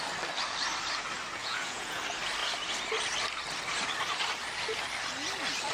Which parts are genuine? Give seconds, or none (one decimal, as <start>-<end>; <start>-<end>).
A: 0.0-1.4; 2.0-5.7